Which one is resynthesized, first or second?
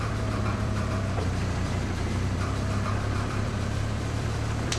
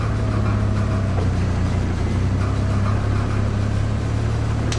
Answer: first